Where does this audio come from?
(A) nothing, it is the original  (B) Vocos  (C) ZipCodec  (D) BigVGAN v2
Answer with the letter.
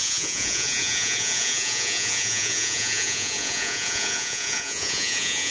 B